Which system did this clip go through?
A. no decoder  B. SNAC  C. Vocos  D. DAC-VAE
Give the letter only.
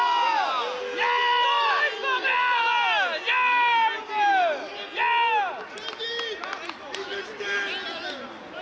A